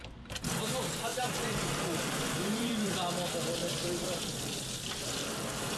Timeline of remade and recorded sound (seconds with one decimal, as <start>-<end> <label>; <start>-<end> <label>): 0.0-1.1 recorded; 1.1-2.9 remade; 2.9-3.6 recorded; 3.6-4.9 remade; 4.9-5.8 recorded